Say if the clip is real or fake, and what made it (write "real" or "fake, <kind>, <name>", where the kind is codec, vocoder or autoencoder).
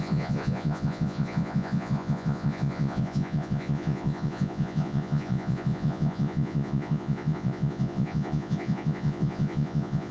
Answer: fake, vocoder, Vocos